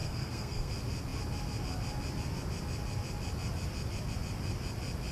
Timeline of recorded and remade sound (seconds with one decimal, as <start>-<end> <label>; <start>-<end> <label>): 0.0-0.7 remade; 0.7-5.1 recorded